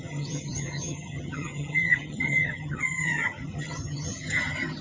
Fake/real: fake